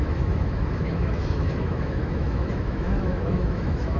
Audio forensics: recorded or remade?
remade